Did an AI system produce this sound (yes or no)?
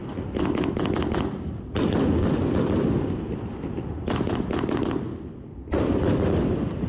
yes